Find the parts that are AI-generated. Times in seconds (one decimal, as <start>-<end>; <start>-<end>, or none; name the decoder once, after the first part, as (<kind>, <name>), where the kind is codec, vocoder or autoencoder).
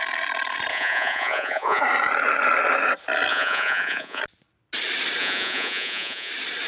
0.7-1.8 (vocoder, Vocos); 3.3-4.2; 5.2-6.3